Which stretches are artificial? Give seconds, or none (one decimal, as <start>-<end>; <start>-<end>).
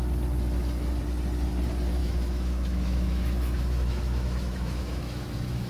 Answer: 2.0-5.7